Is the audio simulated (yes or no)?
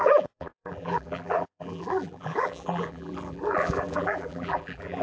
yes